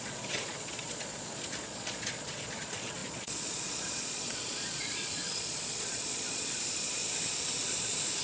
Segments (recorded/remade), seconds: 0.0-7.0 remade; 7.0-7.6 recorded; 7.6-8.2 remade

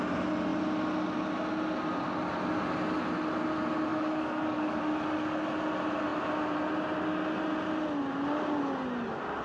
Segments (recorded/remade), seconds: 0.0-3.9 recorded; 3.9-4.8 remade; 4.8-9.4 recorded